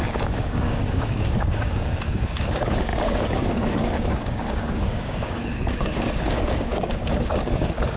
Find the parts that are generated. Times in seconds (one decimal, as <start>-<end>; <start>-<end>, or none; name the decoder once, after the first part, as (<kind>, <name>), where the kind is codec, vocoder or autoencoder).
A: 0.0-8.0 (codec, DAC)